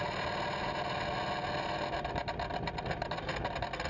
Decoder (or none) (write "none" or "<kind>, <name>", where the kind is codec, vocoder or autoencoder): none